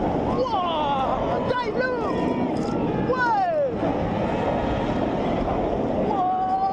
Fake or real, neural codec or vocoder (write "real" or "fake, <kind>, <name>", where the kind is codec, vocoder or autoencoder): real